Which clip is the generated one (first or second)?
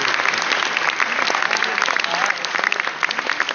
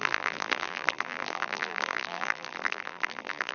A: second